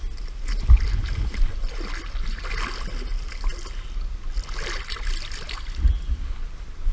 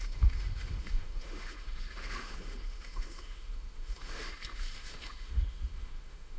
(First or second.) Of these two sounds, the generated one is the second